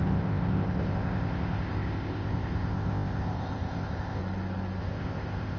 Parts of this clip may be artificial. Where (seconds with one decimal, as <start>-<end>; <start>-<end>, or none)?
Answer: 0.0-4.2; 4.8-5.6